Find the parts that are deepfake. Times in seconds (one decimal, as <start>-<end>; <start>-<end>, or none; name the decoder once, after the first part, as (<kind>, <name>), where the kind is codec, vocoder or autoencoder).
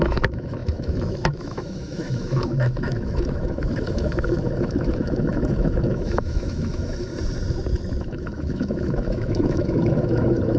0.0-7.1 (autoencoder, DAC-VAE); 8.0-10.6